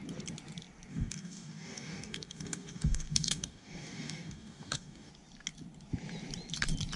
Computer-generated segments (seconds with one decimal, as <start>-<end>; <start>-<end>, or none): 0.9-5.1